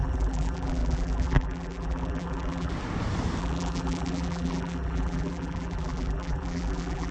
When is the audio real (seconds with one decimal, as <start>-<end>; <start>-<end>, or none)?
2.7-3.4